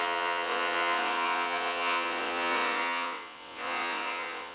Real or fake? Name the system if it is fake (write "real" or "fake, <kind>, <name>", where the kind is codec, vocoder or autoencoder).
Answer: fake, vocoder, WaveNeXt